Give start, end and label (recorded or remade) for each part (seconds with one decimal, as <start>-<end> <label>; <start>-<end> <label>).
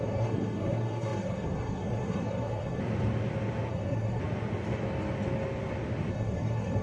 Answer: 0.0-2.8 remade; 2.8-3.7 recorded; 3.7-4.2 remade; 4.2-6.1 recorded; 6.1-6.8 remade